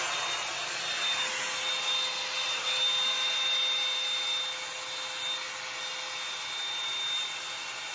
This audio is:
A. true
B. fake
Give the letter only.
A